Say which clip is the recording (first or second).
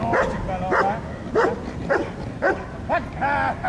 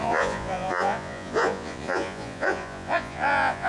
first